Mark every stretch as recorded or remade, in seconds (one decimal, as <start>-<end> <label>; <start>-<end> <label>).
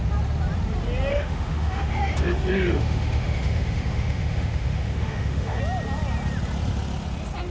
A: 0.0-1.1 recorded; 1.1-5.6 remade; 5.6-7.5 recorded